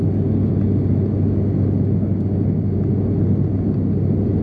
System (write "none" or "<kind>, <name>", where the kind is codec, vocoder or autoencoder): none